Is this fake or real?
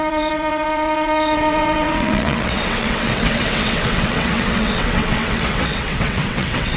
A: fake